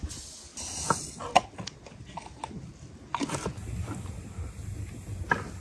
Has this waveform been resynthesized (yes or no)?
no